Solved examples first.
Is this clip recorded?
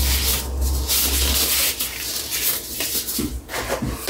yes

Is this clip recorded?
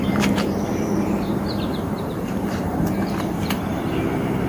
no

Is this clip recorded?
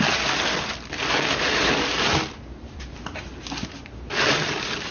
yes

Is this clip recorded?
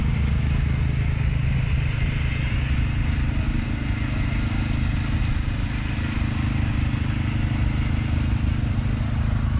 yes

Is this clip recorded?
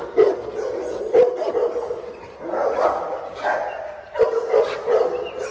yes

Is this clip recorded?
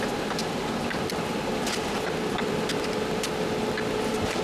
yes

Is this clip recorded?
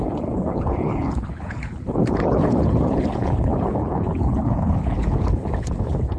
no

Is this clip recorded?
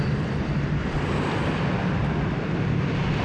yes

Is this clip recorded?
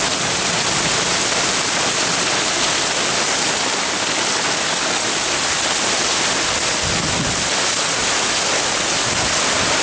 yes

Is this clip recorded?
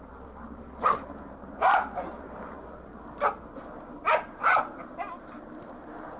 no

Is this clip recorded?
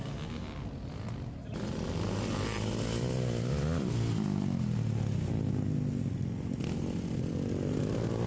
yes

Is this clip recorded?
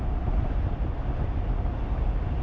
yes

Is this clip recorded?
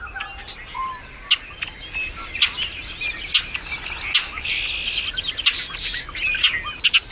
yes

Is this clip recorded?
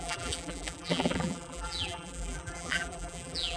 no